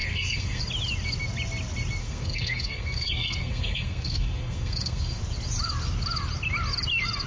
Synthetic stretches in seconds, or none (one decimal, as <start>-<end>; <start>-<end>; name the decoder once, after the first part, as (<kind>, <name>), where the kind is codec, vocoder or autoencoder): 0.0-0.6 (codec, SNAC); 2.0-5.2